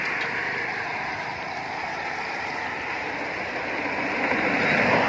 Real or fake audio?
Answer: real